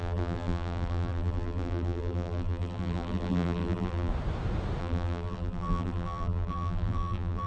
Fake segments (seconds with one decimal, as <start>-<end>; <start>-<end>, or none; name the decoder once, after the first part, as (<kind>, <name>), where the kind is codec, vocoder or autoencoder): 0.0-4.1 (vocoder, BigVGAN v2); 4.8-7.5

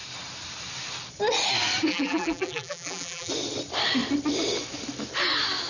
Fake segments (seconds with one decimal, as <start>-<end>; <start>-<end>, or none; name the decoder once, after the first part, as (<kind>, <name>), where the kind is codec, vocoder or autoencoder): 1.9-3.3 (vocoder, BigVGAN v2)

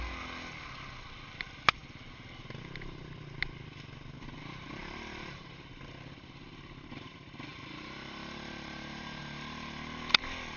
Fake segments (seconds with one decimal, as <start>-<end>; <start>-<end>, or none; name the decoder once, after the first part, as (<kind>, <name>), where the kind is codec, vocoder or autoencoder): 4.8-5.6 (vocoder, BigVGAN v2); 7.5-9.2

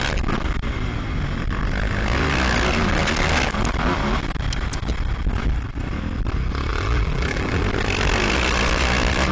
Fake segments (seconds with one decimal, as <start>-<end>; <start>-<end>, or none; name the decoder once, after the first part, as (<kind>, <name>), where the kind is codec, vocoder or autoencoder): 6.7-7.6 (vocoder, BigVGAN v2)

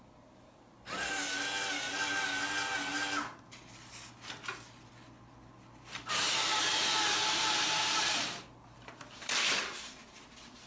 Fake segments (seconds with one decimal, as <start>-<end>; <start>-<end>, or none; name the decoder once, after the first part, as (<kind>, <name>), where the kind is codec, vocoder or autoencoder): 2.9-3.6 (vocoder, BigVGAN v2); 6.7-10.7